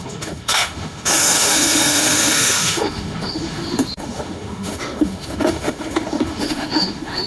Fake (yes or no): yes